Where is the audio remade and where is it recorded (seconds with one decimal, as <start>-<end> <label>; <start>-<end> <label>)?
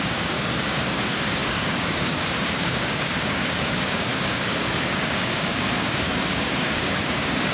0.0-7.5 remade